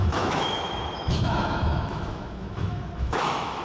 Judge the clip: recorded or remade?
remade